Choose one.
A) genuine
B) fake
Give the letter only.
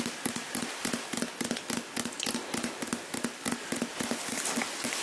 A